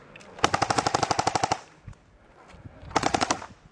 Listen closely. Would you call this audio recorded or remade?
recorded